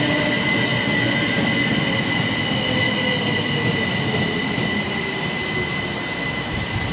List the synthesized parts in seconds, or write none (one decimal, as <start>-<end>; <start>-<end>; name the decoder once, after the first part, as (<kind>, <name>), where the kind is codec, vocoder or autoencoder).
none